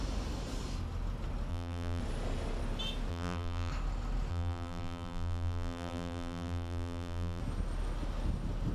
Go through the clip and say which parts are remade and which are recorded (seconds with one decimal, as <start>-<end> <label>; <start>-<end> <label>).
0.0-1.5 recorded; 1.5-2.0 remade; 2.0-3.1 recorded; 3.1-3.7 remade; 3.7-4.3 recorded; 4.3-7.4 remade; 7.4-8.7 recorded